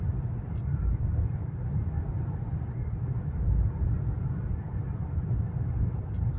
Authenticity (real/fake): real